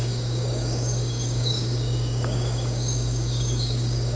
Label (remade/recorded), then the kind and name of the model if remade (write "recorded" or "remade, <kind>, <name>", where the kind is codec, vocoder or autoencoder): remade, codec, DAC